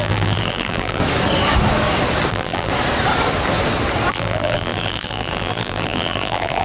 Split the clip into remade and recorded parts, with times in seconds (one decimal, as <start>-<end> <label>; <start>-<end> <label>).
0.0-1.0 remade; 1.0-2.3 recorded; 2.3-2.7 remade; 2.7-4.1 recorded; 4.1-6.6 remade